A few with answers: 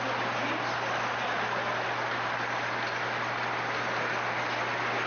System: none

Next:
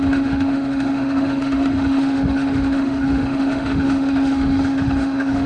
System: autoencoder, DAC-VAE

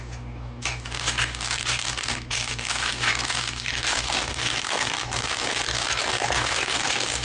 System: codec, DAC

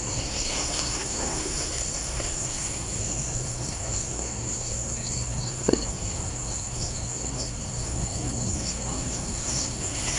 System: codec, SNAC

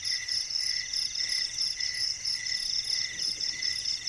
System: none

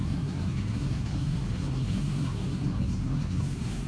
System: codec, SNAC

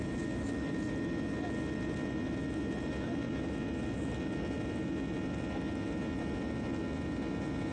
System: none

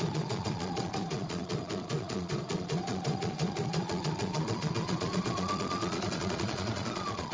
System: vocoder, Vocos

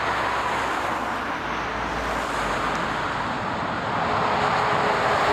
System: none